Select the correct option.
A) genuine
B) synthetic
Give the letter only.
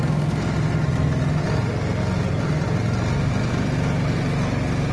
A